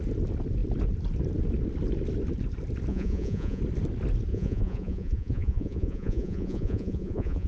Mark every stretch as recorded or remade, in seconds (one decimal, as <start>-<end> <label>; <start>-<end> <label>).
0.0-2.9 recorded; 2.9-3.6 remade; 3.6-4.3 recorded; 4.3-7.5 remade